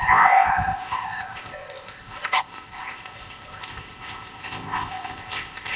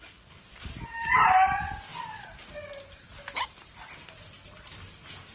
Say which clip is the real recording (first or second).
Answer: second